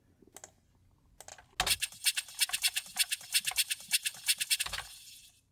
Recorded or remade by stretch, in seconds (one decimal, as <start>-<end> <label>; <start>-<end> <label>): 0.0-5.5 recorded